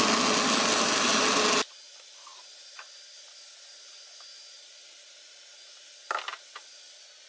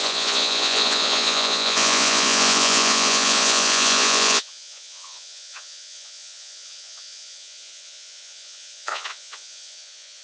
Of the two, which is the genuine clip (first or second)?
first